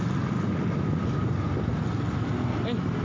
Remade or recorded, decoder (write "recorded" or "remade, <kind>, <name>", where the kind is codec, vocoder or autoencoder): recorded